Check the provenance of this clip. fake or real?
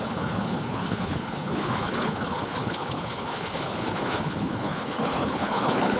fake